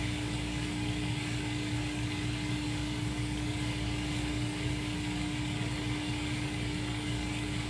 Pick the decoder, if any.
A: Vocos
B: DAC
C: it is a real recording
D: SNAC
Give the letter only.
B